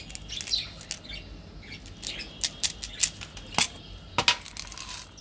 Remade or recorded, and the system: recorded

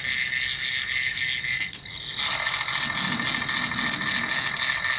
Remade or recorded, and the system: recorded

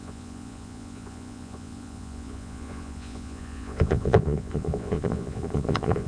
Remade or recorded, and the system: remade, vocoder, Vocos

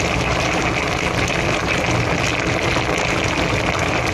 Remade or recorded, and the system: recorded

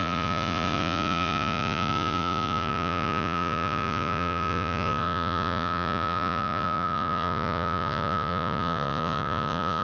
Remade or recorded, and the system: remade, vocoder, Vocos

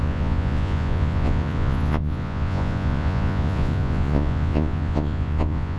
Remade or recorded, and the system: remade, vocoder, Vocos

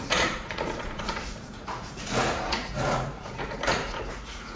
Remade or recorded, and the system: remade, vocoder, Vocos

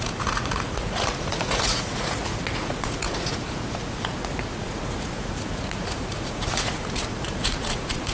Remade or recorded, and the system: remade, vocoder, Vocos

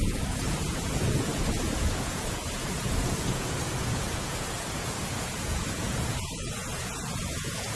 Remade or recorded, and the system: remade, vocoder, Vocos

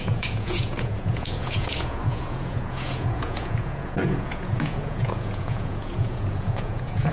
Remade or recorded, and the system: remade, vocoder, Vocos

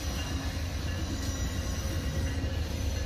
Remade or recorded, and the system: recorded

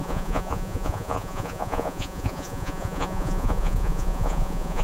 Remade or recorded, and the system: remade, vocoder, Vocos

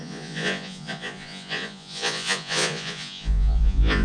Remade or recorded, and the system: remade, vocoder, Vocos